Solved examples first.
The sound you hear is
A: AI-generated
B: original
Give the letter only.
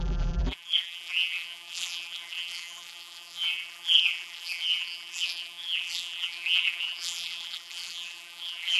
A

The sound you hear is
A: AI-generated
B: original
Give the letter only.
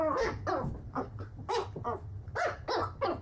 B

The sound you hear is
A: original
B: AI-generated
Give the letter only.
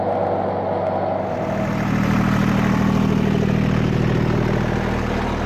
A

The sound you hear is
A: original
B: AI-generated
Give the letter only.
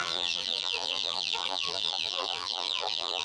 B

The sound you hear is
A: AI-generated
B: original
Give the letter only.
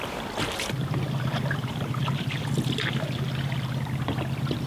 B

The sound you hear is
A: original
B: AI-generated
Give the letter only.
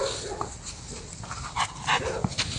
A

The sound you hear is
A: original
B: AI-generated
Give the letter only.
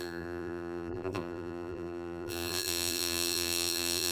B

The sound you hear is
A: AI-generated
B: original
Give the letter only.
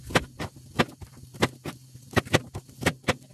A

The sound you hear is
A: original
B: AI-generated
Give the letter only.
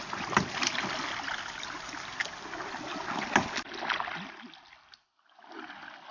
A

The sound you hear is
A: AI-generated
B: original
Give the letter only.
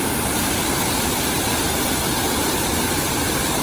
A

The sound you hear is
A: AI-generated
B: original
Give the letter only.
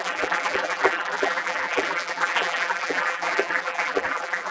A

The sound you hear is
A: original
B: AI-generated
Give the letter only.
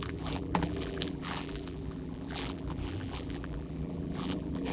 B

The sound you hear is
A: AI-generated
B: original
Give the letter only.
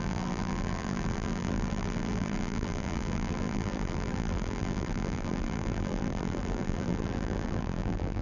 A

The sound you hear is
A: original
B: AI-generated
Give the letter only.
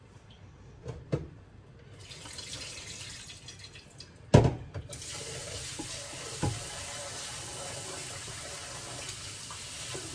A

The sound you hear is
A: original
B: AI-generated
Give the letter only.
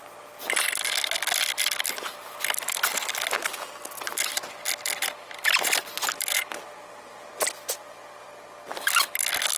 A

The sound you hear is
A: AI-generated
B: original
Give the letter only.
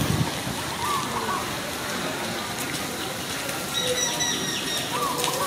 B